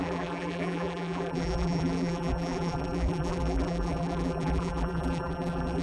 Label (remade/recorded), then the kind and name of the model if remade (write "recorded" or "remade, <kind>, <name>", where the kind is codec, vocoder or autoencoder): remade, vocoder, BigVGAN v2